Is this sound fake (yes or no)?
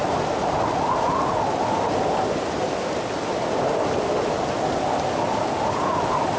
no